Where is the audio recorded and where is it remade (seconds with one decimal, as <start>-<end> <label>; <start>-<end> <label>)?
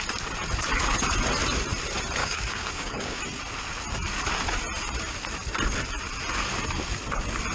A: 0.0-2.2 recorded; 2.2-3.2 remade; 3.2-7.5 recorded